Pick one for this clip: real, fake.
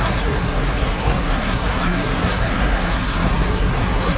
fake